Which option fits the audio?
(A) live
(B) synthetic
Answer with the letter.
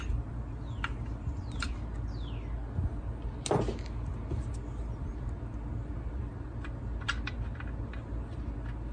A